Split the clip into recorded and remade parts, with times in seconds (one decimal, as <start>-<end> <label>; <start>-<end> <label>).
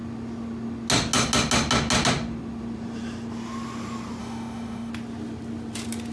0.0-4.2 recorded; 4.2-4.9 remade; 4.9-6.1 recorded